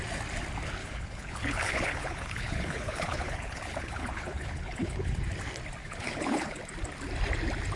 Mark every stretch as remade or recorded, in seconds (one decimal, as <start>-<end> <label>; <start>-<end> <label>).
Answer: 0.0-0.8 recorded; 0.8-5.2 remade; 5.2-5.8 recorded; 5.8-6.6 remade; 6.6-7.8 recorded

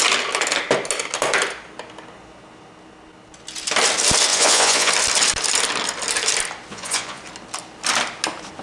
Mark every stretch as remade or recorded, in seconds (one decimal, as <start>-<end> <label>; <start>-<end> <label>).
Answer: 0.0-4.3 recorded; 4.3-4.9 remade; 4.9-6.7 recorded; 6.7-7.2 remade; 7.2-8.6 recorded

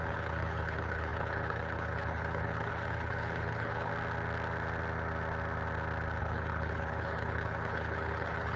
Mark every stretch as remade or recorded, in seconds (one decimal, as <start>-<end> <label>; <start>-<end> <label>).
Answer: 0.0-3.9 remade; 3.9-6.2 recorded; 6.2-8.6 remade

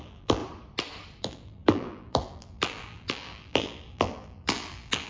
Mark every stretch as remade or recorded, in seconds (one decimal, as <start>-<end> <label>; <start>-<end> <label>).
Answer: 0.0-0.4 remade; 0.4-1.2 recorded; 1.2-5.1 remade

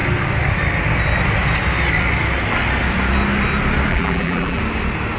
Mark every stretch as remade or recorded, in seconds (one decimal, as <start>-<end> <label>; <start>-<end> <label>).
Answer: 0.0-3.9 recorded; 3.9-4.6 remade; 4.6-5.2 recorded